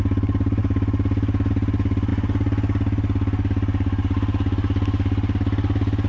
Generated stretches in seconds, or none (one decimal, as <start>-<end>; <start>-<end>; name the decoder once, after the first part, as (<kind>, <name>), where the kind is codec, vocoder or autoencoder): none